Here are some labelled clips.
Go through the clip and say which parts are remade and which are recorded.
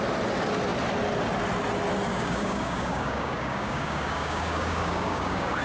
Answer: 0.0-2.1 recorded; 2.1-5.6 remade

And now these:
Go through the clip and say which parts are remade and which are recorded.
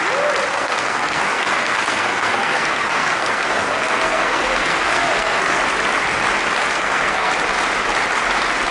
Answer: 0.0-0.5 recorded; 0.5-5.6 remade; 5.6-6.6 recorded; 6.6-7.3 remade; 7.3-8.7 recorded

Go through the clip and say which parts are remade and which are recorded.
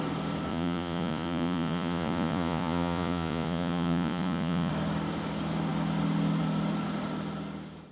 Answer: 0.0-0.5 recorded; 0.5-4.7 remade; 4.7-7.9 recorded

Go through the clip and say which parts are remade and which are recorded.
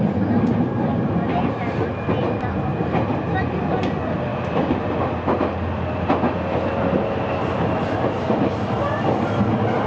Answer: 0.0-9.9 recorded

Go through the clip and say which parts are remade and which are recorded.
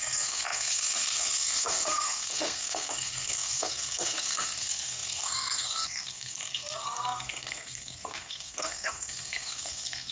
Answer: 0.0-10.1 remade